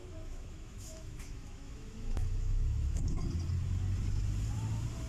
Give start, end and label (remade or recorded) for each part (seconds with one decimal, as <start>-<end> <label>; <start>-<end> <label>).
0.0-3.0 remade; 3.0-5.1 recorded